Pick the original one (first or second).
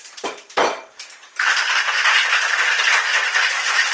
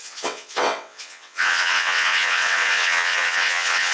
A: first